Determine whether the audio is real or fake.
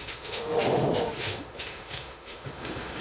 fake